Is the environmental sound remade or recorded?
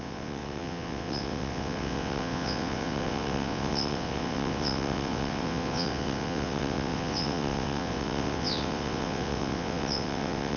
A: remade